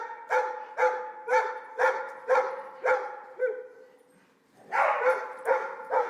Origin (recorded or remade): recorded